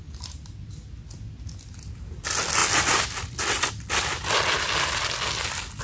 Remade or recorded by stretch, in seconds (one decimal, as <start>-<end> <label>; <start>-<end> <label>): 0.0-5.8 recorded